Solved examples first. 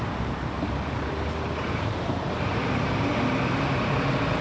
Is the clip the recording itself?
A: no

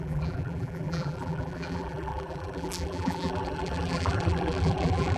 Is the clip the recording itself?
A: no